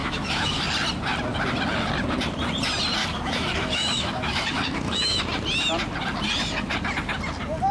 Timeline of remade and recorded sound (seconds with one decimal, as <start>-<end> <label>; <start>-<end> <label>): 0.0-0.6 remade; 0.6-3.0 recorded; 3.0-5.2 remade; 5.2-7.7 recorded